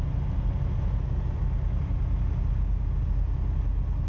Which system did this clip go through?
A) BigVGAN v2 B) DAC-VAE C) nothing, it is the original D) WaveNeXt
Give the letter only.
C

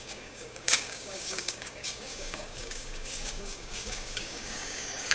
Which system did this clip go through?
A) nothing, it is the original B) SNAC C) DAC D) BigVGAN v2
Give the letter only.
C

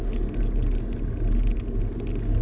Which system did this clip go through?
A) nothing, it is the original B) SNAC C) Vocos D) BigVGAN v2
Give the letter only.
A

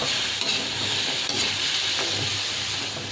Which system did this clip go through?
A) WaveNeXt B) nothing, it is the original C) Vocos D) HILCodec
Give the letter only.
B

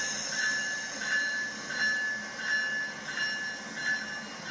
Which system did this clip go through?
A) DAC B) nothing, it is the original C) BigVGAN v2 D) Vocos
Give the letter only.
B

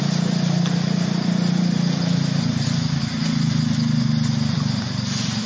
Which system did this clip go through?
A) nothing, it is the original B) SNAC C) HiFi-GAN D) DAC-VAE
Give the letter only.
A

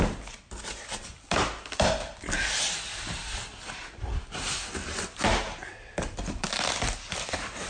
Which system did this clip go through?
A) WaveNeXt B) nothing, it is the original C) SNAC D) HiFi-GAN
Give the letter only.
B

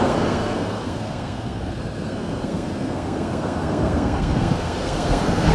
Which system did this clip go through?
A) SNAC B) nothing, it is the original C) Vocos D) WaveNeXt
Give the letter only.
A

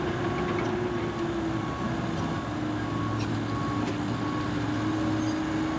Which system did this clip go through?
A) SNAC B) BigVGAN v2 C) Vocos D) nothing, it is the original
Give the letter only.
D